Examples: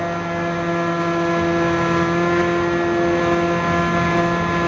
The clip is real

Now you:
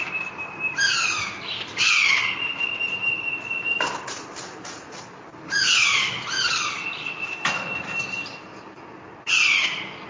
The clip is real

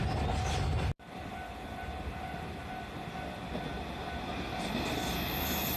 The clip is real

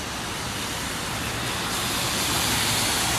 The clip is real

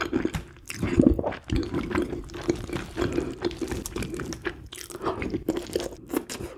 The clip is real